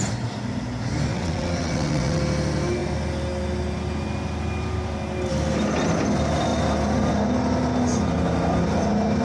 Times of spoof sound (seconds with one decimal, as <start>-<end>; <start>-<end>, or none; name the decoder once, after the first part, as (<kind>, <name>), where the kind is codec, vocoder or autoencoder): 1.1-2.2 (vocoder, WaveNeXt)